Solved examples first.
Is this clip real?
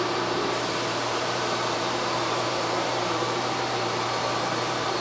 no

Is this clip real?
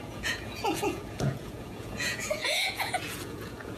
no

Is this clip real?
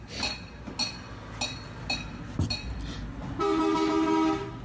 yes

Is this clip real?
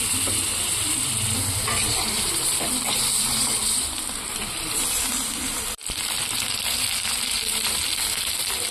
no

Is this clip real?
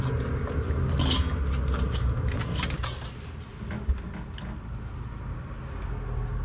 yes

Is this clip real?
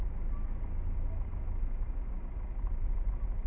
yes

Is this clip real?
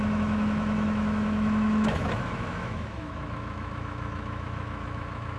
no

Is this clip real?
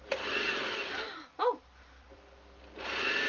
no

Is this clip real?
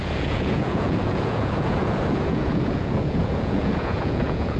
no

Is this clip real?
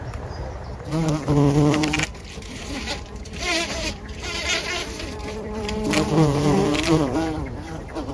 no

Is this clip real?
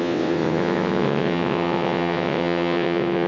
no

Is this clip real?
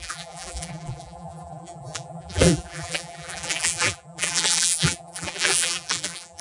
no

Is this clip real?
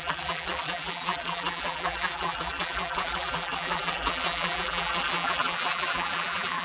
no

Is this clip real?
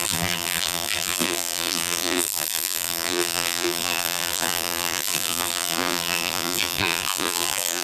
no